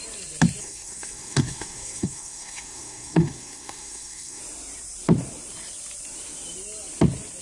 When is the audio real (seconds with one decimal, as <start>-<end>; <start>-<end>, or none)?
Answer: 0.0-0.6; 4.4-7.4